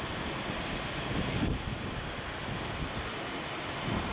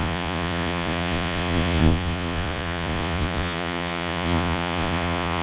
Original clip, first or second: first